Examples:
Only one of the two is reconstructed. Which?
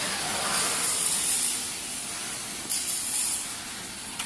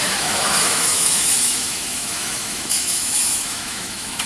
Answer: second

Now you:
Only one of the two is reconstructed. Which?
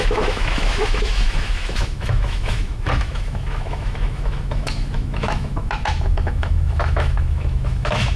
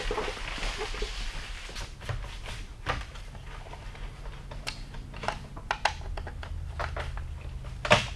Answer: first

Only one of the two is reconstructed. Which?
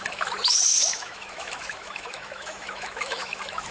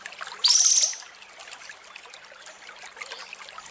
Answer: first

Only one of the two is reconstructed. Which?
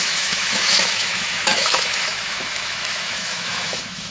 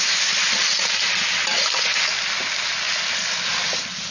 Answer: first